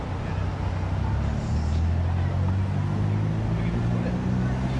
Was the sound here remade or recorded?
recorded